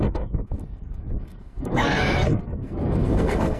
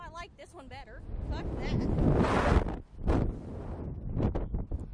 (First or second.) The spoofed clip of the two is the first